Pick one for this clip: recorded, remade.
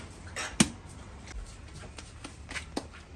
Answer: recorded